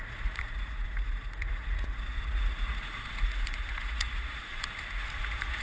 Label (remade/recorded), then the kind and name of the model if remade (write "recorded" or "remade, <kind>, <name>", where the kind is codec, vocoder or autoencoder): remade, vocoder, Vocos